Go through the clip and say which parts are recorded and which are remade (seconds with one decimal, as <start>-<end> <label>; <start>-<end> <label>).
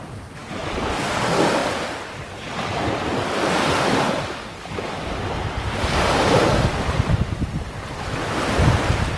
0.0-9.2 recorded